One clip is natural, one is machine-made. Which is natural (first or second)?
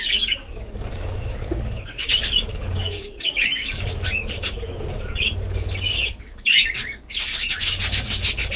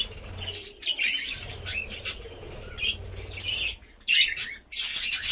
second